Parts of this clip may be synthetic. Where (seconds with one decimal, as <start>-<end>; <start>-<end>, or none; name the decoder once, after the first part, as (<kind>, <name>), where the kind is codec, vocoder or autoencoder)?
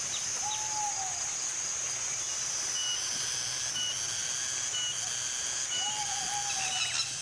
none